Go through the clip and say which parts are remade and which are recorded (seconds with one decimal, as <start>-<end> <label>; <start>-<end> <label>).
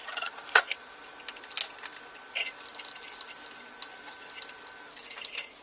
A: 0.0-0.6 remade; 0.6-5.6 recorded